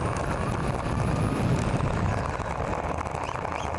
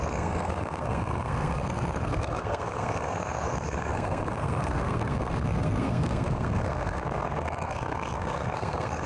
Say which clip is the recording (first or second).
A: first